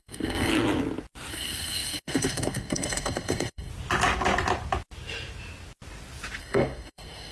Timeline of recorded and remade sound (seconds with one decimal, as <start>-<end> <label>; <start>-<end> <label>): 0.0-0.5 remade; 0.5-1.3 recorded; 1.3-3.7 remade; 3.7-6.4 recorded; 6.4-7.3 remade